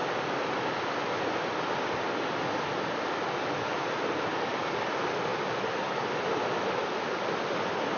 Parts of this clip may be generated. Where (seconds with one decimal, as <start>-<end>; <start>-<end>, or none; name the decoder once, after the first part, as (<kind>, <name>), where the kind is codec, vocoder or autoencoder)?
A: none